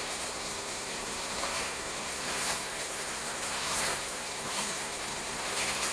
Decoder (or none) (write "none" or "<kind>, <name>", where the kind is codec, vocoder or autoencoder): codec, SNAC